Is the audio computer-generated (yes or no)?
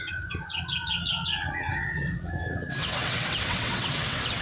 yes